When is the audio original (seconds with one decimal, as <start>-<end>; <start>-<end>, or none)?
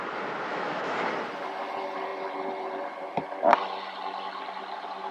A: 0.0-0.5; 1.0-5.1